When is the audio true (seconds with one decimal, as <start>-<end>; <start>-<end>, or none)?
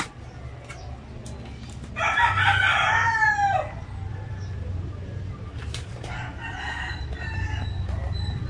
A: 0.0-4.1; 6.5-8.5